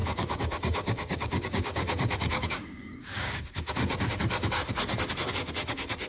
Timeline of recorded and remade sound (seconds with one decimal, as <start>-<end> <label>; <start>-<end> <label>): 0.0-3.7 remade; 3.7-6.1 recorded